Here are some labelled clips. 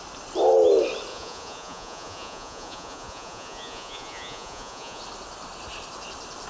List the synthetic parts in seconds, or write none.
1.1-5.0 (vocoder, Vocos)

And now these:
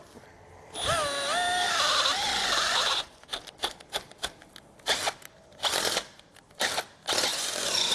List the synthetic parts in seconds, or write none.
2.3-3.3 (vocoder, Vocos); 7.3-7.9

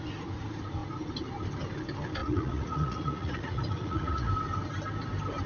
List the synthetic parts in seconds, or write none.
2.2-4.3 (vocoder, Vocos)